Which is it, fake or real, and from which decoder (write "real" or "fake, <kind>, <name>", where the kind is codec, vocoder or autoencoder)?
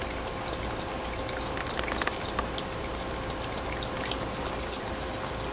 real